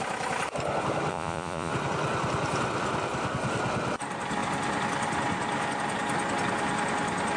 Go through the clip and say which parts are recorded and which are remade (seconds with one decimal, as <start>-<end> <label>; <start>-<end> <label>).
0.0-1.1 recorded; 1.1-1.7 remade; 1.7-7.4 recorded